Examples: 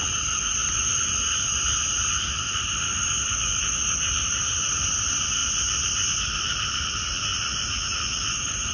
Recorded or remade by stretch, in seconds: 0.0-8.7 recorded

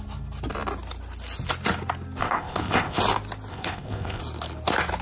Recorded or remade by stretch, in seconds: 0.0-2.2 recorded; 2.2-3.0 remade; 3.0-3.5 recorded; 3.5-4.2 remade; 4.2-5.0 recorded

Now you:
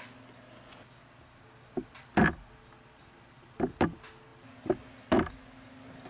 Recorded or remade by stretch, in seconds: 0.0-6.1 recorded